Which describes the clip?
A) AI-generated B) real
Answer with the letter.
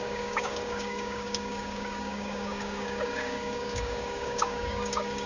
A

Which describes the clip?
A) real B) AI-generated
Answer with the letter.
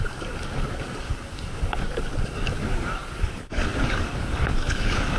B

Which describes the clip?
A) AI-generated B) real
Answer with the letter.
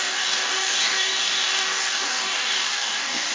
A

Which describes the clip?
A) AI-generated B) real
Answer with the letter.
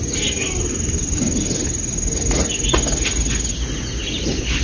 B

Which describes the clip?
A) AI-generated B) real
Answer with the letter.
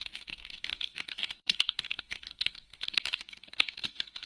A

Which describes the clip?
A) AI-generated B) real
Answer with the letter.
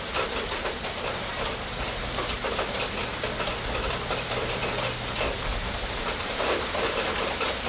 B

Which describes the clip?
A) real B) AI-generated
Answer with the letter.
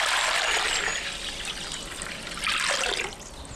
A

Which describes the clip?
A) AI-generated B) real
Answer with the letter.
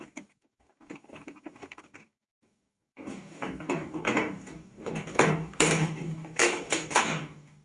A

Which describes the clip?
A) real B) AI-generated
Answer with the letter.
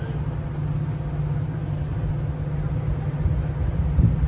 A